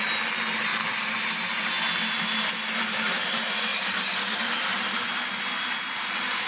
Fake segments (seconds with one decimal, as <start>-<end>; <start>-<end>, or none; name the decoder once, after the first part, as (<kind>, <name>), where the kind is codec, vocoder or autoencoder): none